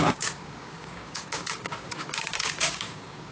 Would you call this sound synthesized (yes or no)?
yes